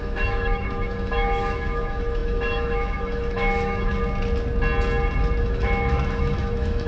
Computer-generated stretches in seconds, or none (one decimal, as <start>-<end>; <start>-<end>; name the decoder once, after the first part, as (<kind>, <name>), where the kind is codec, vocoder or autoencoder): 0.0-3.9 (autoencoder, DAC-VAE); 5.4-6.9